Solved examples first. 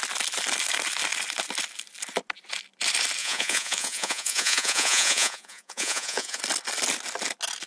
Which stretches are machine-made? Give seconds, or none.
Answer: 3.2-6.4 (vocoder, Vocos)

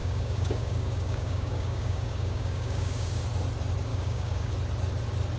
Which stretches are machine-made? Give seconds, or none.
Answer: 0.0-3.2 (codec, DAC); 3.9-4.5